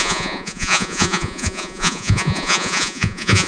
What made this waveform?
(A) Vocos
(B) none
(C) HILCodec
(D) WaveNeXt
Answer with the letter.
A